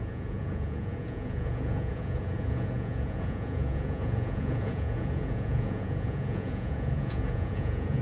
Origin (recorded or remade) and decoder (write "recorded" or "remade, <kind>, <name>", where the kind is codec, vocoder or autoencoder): remade, vocoder, Vocos